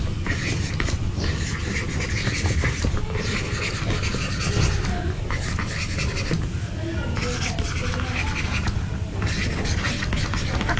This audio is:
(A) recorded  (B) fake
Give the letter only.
A